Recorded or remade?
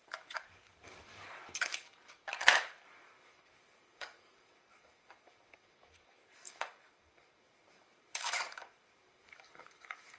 remade